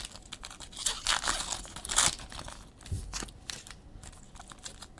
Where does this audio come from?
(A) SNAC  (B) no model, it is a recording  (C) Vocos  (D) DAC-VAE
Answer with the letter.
B